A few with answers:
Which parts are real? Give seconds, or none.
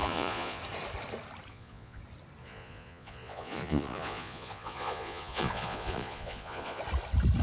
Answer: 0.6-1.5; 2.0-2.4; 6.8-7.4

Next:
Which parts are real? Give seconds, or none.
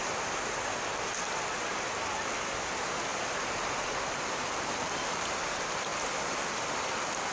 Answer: 0.0-3.1; 5.4-7.3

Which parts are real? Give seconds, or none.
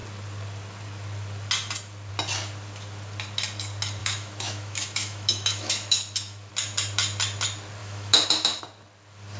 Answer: 0.0-4.0; 6.5-7.8; 8.6-9.4